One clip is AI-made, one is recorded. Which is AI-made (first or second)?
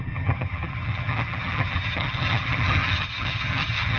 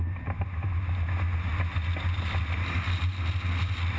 first